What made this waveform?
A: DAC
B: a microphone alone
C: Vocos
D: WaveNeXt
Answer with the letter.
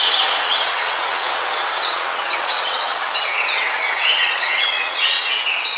D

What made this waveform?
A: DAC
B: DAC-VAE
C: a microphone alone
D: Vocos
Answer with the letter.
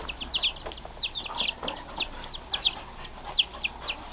C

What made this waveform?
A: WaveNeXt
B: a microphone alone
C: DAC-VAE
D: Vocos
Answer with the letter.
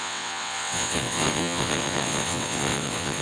A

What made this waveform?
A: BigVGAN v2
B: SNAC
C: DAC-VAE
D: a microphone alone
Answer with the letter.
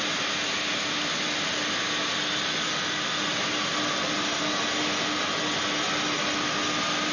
D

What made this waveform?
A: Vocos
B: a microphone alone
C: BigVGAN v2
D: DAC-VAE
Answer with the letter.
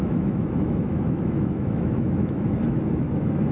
D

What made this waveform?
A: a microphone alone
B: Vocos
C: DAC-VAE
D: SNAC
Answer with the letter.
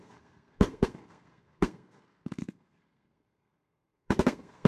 D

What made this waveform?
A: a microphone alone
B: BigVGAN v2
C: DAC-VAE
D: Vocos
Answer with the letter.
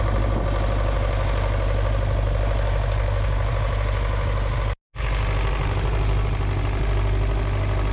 A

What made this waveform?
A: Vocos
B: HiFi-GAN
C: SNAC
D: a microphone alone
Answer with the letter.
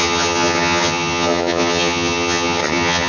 B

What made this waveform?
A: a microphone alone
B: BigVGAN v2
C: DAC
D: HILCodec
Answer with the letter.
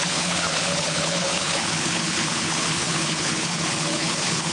D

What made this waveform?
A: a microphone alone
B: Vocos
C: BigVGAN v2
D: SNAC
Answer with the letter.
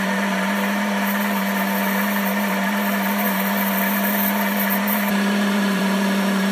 C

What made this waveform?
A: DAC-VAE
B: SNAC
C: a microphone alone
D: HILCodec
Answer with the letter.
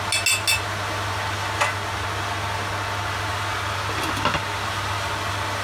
C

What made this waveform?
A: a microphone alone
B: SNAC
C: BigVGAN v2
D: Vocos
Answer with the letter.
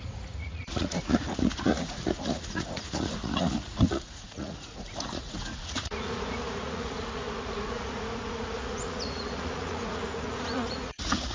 D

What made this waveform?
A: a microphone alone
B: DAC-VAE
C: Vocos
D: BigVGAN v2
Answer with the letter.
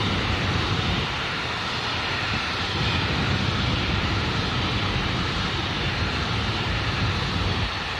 D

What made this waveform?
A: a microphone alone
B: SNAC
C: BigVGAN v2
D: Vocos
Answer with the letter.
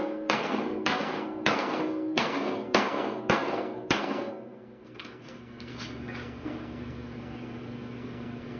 B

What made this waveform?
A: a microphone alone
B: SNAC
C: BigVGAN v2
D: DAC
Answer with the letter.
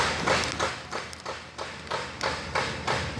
A